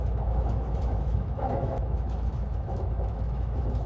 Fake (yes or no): yes